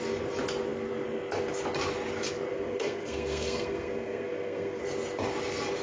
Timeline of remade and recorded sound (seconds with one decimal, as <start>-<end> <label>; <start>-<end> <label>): 0.0-2.5 recorded; 2.5-4.8 remade; 4.8-5.8 recorded